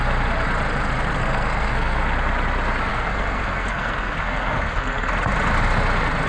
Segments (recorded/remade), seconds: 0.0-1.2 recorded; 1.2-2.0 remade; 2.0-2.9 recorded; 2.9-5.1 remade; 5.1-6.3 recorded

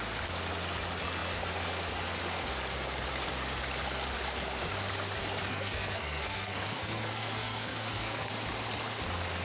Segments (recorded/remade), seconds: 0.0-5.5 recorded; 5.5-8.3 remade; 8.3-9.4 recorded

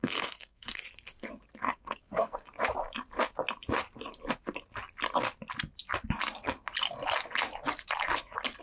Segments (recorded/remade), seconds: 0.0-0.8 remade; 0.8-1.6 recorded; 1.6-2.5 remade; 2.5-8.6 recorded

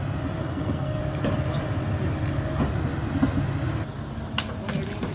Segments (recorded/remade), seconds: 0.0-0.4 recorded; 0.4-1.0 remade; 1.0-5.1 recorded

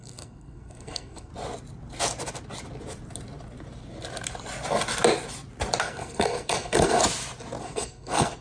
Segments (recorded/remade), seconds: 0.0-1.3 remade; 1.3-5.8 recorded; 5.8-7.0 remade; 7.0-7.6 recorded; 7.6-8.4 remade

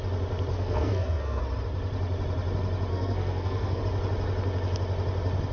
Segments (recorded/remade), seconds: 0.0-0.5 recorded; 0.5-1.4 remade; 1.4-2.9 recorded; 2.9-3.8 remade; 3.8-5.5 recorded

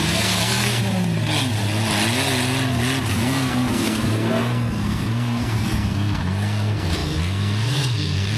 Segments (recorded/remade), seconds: 0.0-0.8 remade; 0.8-3.1 recorded; 3.1-8.4 remade